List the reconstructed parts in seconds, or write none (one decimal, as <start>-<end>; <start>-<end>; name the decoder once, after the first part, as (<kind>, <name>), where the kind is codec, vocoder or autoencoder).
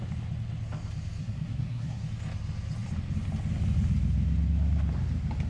1.2-2.0 (codec, SNAC)